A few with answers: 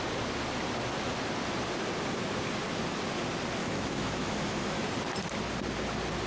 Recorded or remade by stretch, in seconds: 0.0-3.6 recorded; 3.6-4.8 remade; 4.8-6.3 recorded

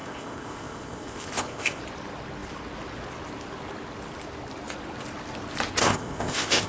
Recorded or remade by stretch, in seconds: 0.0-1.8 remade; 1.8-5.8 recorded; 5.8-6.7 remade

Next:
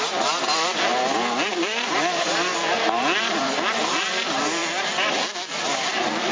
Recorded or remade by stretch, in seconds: 0.0-2.5 remade; 2.5-3.2 recorded; 3.2-6.3 remade

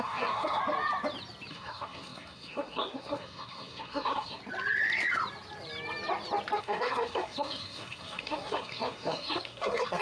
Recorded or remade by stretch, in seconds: 0.0-0.6 remade; 0.6-1.5 recorded; 1.5-4.4 remade; 4.4-6.6 recorded; 6.6-10.0 remade

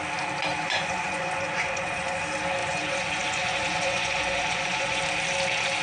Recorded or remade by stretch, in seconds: 0.0-0.5 recorded; 0.5-2.2 remade; 2.2-2.6 recorded; 2.6-5.0 remade; 5.0-5.8 recorded

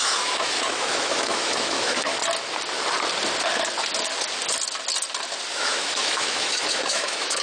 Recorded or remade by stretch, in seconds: 0.0-2.2 remade; 2.2-5.5 recorded; 5.5-7.4 remade